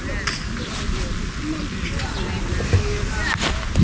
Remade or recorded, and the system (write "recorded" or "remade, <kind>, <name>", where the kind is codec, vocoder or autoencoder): recorded